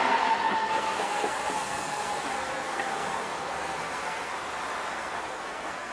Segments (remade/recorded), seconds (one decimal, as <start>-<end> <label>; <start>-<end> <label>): 0.0-4.3 remade; 4.3-4.9 recorded; 4.9-5.9 remade